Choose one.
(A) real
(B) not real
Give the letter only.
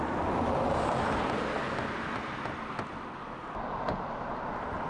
A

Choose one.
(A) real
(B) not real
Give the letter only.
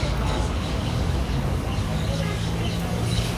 B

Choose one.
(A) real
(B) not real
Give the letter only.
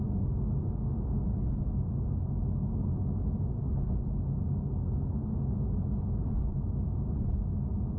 A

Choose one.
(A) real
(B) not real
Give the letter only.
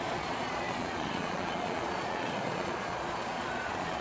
B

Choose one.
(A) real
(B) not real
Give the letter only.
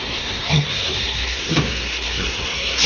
B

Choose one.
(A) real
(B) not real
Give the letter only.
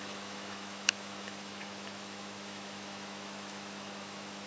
B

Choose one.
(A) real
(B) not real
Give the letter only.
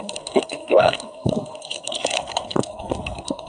B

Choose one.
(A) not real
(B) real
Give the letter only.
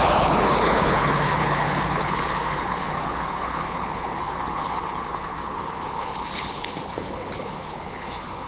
A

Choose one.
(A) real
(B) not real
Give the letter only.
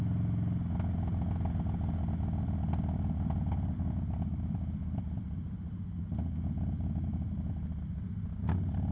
A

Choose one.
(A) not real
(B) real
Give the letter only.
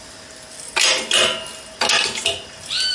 B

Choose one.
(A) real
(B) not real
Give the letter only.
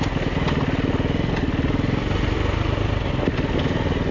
A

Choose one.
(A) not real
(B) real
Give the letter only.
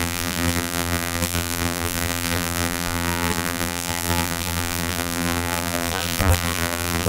A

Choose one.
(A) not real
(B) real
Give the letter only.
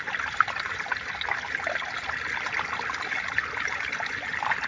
B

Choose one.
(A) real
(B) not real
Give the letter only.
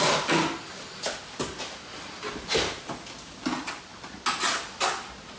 A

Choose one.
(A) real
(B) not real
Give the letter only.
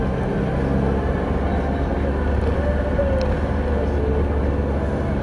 A